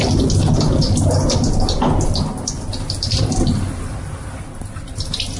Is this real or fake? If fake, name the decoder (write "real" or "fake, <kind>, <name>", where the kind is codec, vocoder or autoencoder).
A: real